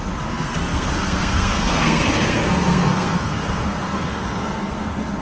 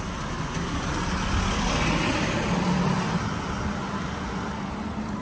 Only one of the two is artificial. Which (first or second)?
first